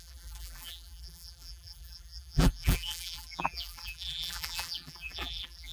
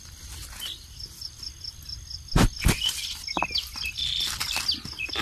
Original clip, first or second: second